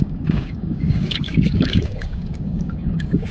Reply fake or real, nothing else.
fake